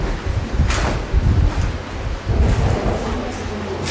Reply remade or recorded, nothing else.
recorded